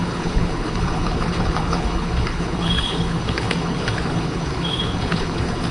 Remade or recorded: remade